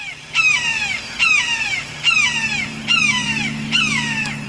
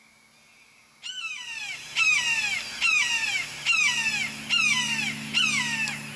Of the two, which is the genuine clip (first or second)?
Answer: second